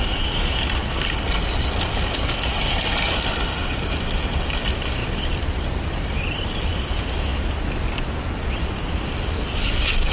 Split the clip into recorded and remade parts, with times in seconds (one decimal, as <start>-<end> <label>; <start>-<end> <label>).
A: 0.0-0.8 remade; 0.8-1.7 recorded; 1.7-5.0 remade; 5.0-6.7 recorded; 6.7-7.3 remade; 7.3-9.0 recorded; 9.0-10.1 remade